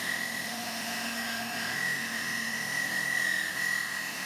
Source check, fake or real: fake